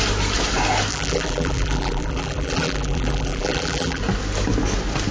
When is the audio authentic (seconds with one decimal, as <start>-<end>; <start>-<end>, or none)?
0.0-0.9; 4.0-5.1

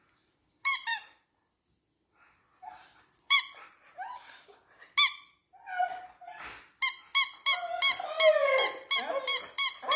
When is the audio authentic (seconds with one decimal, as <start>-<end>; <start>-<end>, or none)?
3.6-10.0

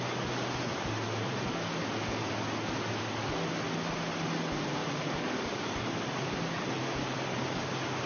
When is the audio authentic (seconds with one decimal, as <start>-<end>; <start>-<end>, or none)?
0.0-4.8; 6.1-8.1

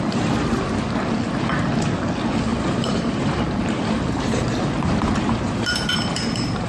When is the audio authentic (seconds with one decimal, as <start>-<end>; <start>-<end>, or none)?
0.0-2.5

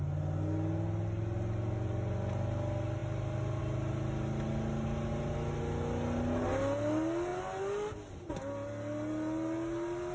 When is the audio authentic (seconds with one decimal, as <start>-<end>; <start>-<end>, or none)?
0.0-10.1

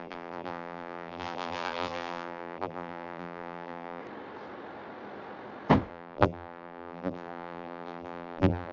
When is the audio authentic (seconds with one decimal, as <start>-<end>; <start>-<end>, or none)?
4.0-5.9

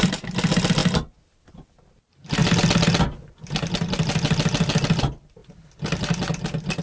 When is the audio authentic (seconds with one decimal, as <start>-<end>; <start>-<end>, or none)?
0.0-6.8